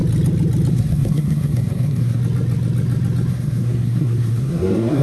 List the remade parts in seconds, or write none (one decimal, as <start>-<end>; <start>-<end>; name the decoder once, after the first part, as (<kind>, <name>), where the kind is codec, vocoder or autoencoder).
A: 0.7-2.2 (codec, SNAC); 3.3-5.0